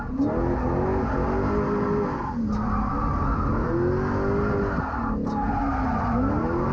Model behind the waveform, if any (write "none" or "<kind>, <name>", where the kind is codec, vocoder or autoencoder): none